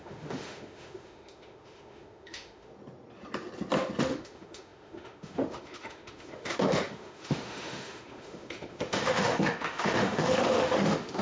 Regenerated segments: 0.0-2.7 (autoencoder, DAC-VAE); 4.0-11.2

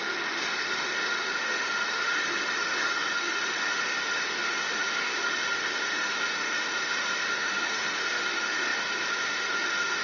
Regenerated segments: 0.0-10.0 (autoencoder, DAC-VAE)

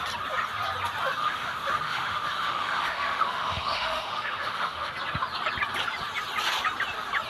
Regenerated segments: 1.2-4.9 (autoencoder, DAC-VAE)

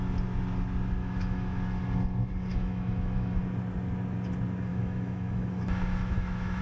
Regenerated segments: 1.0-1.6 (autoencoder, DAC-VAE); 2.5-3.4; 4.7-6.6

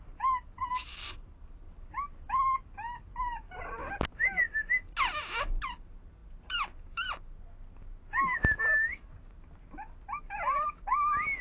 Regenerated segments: none

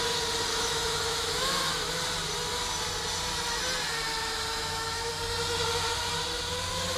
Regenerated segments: 0.5-1.9 (autoencoder, DAC-VAE); 4.5-5.1

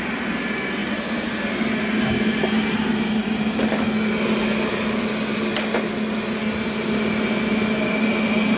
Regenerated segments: none

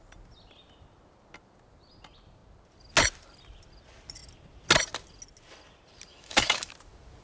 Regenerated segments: 6.1-6.7 (autoencoder, DAC-VAE)